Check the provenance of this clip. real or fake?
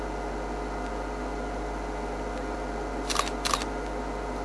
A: real